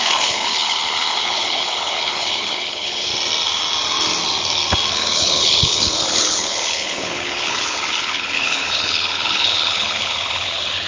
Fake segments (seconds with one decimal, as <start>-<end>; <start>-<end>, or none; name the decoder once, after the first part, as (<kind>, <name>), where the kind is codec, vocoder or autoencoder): 0.0-3.1 (codec, HILCodec); 4.9-10.9